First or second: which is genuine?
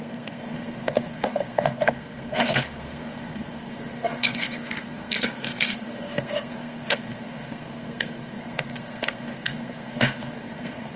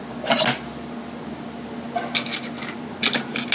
second